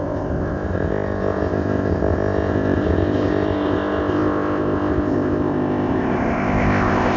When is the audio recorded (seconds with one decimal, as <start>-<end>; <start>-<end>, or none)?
none